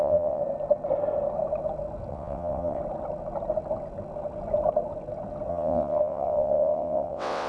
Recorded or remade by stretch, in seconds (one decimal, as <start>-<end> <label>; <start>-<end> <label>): 0.0-0.4 remade; 0.4-2.1 recorded; 2.1-2.8 remade; 2.8-5.5 recorded; 5.5-7.5 remade